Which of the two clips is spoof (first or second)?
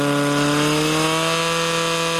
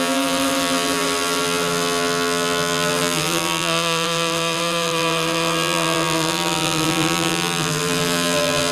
second